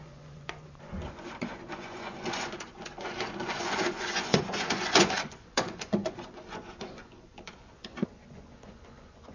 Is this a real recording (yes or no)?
no